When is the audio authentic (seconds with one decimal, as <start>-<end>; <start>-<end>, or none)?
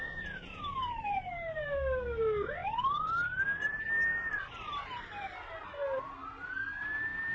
0.6-7.3